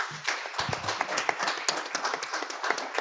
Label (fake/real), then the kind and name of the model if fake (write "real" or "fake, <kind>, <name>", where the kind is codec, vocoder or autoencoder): real